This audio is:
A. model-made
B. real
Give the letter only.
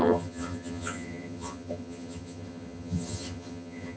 A